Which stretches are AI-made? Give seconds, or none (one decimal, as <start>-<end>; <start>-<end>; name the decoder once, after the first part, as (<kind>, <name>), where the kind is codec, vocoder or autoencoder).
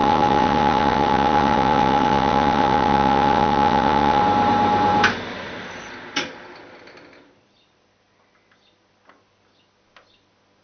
0.0-4.2 (vocoder, WaveNeXt)